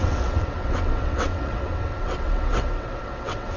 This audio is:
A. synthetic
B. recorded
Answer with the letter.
A